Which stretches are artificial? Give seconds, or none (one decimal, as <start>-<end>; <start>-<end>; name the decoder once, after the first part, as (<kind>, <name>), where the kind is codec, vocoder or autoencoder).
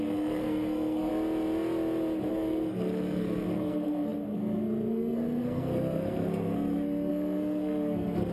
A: 0.0-1.1 (codec, SNAC); 2.3-8.3